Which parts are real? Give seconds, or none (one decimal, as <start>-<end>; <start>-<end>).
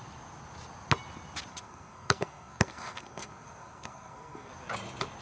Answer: 0.0-1.5; 4.5-5.2